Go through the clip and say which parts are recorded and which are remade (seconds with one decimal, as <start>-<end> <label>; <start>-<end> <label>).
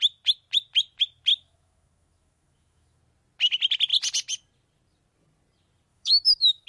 0.0-1.3 recorded; 1.3-3.0 remade; 3.0-5.9 recorded; 5.9-6.7 remade